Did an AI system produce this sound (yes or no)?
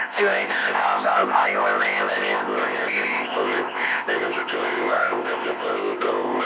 yes